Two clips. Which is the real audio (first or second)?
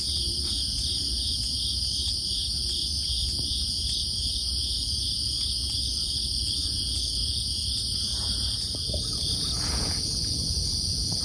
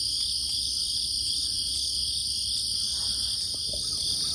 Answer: second